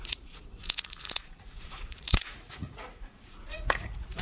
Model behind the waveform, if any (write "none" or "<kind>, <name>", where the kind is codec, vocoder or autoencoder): vocoder, Vocos